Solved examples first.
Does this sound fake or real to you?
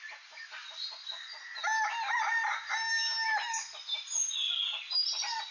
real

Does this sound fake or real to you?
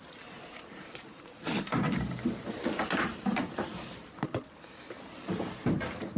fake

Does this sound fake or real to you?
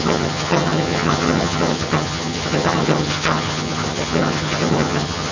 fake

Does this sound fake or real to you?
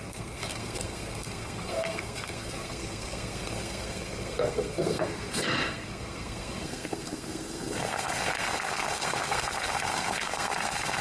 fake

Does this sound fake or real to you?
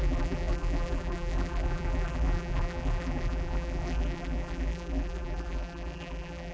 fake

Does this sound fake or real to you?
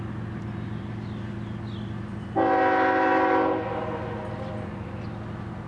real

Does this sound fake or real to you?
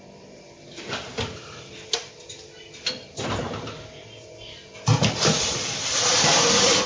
real